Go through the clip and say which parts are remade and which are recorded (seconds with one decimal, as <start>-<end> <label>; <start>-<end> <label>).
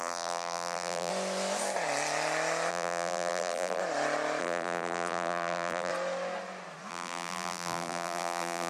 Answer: 0.0-1.1 remade; 1.1-2.7 recorded; 2.7-3.8 remade; 3.8-4.4 recorded; 4.4-5.9 remade; 5.9-6.9 recorded; 6.9-8.7 remade